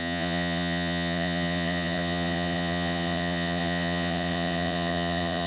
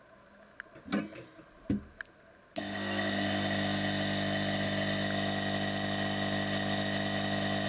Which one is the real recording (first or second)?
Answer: second